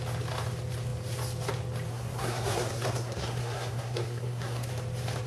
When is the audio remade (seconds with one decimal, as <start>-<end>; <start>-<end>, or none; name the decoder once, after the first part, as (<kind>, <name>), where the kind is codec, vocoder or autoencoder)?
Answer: 1.9-4.7 (codec, SNAC)